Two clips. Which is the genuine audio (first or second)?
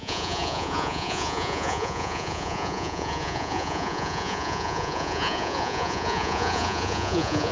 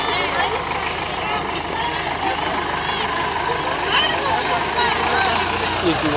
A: second